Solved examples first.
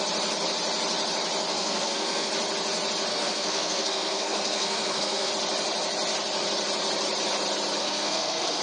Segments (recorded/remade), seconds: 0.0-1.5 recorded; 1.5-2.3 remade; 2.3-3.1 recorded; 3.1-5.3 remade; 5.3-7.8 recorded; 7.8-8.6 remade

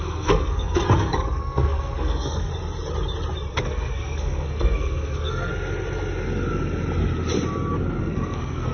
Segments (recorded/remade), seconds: 0.0-2.5 remade; 2.5-3.5 recorded; 3.5-5.5 remade; 5.5-8.0 recorded; 8.0-8.7 remade